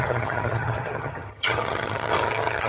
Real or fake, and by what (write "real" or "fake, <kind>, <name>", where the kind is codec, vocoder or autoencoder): fake, vocoder, HiFi-GAN